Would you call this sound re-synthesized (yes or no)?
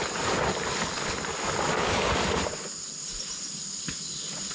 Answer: no